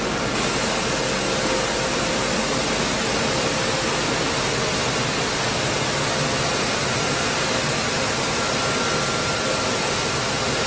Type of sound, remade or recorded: recorded